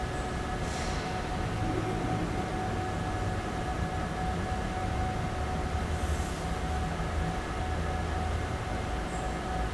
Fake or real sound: real